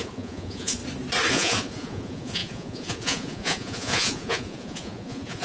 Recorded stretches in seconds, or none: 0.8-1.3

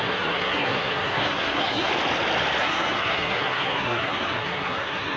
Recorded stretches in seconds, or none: 1.9-2.6